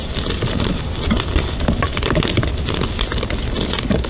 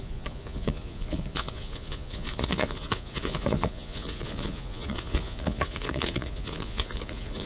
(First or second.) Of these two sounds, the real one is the first